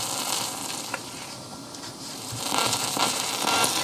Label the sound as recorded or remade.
remade